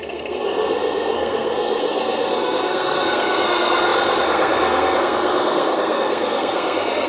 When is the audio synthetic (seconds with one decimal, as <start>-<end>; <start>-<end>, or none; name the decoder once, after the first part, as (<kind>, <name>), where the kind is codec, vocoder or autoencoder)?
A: 0.0-7.1 (codec, SNAC)